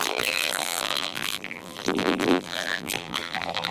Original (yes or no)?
no